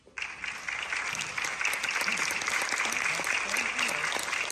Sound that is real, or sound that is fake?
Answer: real